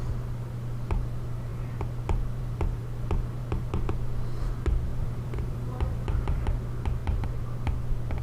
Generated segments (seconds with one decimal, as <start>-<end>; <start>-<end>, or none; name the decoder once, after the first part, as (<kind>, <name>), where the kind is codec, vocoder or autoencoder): 4.9-6.5 (vocoder, BigVGAN v2); 7.0-8.2